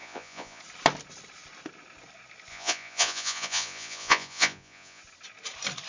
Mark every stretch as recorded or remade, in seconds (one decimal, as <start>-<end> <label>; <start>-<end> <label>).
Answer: 0.0-0.6 remade; 0.6-2.5 recorded; 2.5-5.0 remade; 5.0-5.9 recorded